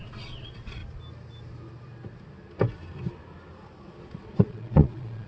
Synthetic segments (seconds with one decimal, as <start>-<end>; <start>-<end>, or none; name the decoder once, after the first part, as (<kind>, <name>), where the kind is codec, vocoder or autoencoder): 0.0-0.8 (vocoder, Vocos); 4.0-5.3